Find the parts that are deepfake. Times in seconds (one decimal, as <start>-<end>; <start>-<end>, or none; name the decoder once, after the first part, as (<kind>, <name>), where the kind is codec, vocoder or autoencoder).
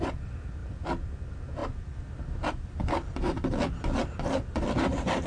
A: none